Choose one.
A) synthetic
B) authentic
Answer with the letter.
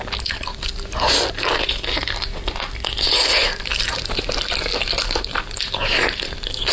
B